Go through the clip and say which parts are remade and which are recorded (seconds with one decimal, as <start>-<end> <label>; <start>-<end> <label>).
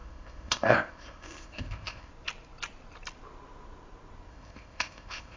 0.0-2.1 remade; 2.1-4.3 recorded; 4.3-5.4 remade